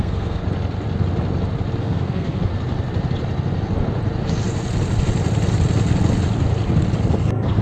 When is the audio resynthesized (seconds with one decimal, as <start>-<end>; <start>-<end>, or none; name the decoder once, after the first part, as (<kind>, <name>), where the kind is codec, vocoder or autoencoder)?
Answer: 0.0-0.4 (codec, SNAC); 1.8-2.5; 7.1-7.6